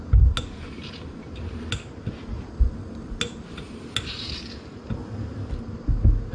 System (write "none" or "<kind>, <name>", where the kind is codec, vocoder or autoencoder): none